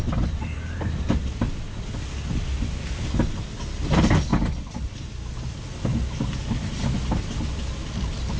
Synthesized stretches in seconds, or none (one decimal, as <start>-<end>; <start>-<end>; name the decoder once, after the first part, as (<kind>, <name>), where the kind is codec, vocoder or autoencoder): none